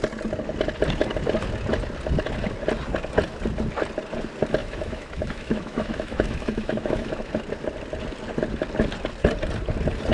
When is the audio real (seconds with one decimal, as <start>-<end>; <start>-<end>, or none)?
0.0-4.6; 7.3-10.1